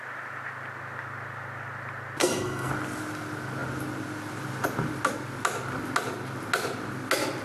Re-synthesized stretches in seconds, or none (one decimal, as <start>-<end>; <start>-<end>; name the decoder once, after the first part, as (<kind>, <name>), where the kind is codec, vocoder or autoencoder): 2.2-2.7 (codec, SNAC)